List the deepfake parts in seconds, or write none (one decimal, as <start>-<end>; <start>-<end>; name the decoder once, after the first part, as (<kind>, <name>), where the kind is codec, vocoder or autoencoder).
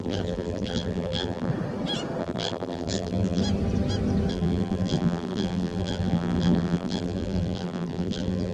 0.0-1.5 (vocoder, BigVGAN v2); 2.2-3.4; 4.3-8.5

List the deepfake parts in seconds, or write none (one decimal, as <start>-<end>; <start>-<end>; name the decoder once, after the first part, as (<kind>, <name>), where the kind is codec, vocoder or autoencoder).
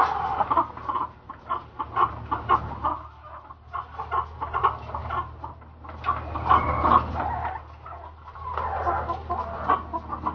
none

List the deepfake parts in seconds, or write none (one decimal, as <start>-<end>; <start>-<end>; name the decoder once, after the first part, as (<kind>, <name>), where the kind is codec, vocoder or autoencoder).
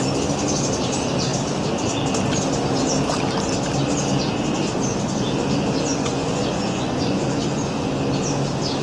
5.9-7.9 (vocoder, Vocos)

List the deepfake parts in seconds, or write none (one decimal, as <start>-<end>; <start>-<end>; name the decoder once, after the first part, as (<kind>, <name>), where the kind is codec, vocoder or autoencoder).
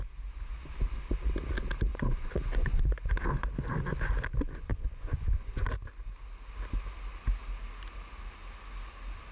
1.9-3.1 (vocoder, Vocos); 4.7-5.4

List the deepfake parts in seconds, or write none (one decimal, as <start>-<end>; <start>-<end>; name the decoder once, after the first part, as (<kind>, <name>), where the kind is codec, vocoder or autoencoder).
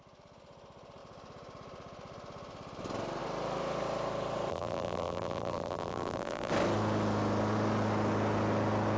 4.5-6.5 (vocoder, BigVGAN v2)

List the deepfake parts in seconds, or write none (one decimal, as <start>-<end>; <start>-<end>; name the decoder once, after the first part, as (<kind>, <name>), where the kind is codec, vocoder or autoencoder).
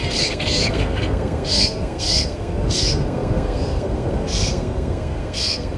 0.0-5.8 (codec, SNAC)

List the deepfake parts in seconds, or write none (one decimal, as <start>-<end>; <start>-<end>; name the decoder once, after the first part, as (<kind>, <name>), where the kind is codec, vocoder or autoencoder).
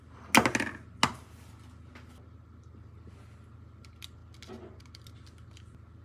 none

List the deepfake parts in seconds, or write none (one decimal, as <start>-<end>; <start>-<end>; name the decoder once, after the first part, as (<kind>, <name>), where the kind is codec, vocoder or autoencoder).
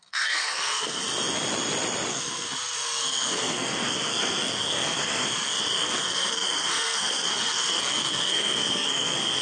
0.0-1.0 (codec, SNAC); 2.1-9.4